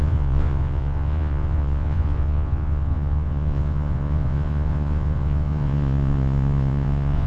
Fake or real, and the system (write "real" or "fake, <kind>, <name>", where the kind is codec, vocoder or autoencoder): fake, vocoder, Vocos